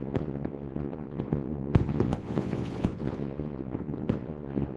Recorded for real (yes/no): no